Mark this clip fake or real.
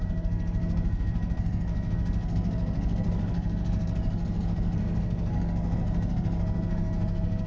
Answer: fake